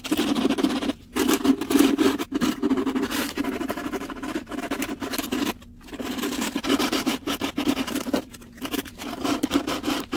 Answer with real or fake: fake